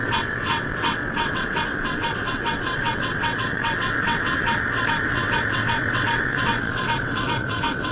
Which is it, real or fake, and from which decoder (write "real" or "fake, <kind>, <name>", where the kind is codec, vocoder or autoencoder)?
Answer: fake, vocoder, WaveNeXt